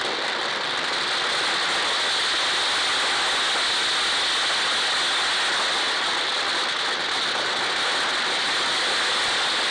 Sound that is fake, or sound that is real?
real